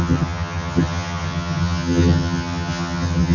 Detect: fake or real fake